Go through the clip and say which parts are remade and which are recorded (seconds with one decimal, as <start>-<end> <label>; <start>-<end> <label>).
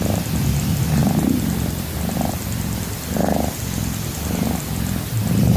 0.0-1.0 recorded; 1.0-3.6 remade; 3.6-5.6 recorded